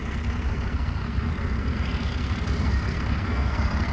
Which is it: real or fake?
fake